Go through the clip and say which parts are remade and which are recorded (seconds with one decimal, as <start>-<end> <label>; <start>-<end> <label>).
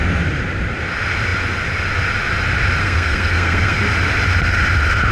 0.0-2.8 recorded; 2.8-3.8 remade; 3.8-5.1 recorded